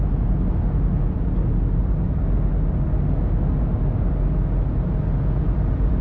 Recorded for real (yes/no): yes